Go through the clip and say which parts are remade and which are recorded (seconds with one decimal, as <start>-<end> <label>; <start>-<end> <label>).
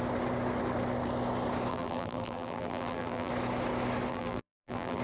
0.0-1.7 recorded; 1.7-3.3 remade; 3.3-4.1 recorded; 4.1-5.0 remade